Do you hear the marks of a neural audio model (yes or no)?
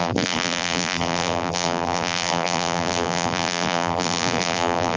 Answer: yes